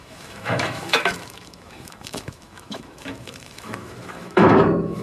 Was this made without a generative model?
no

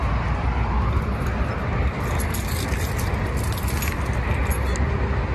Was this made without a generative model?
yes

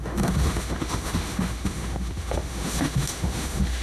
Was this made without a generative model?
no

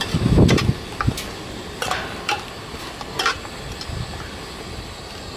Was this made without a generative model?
yes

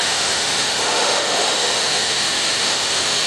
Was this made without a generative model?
no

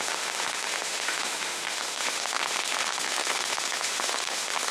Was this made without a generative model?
no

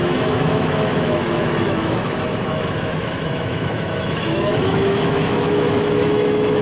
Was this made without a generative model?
no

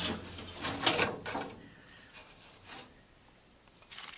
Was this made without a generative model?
yes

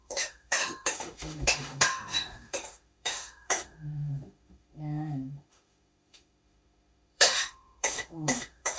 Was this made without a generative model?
no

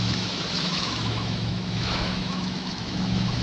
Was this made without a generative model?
no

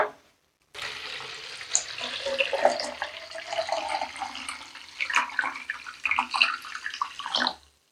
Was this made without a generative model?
yes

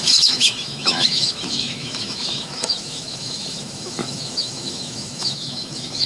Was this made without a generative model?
no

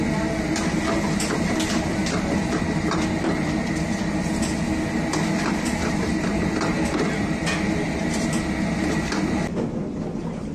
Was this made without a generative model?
yes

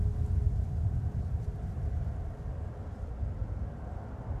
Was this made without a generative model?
yes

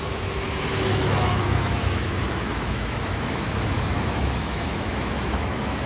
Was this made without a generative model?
no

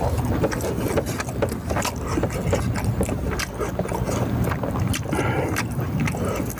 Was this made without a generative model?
yes